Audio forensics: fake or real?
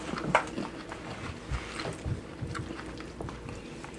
real